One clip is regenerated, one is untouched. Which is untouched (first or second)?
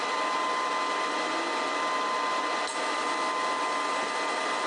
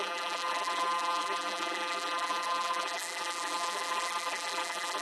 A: first